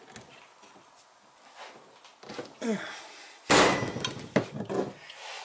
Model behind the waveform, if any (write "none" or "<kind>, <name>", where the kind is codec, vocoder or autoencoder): none